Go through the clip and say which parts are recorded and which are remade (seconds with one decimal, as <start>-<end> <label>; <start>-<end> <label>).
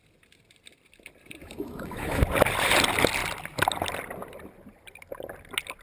0.0-1.4 recorded; 1.4-2.2 remade; 2.2-5.8 recorded